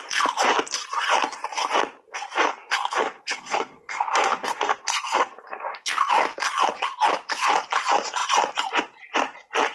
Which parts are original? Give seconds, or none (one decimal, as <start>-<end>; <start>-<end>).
0.0-2.1; 6.1-9.7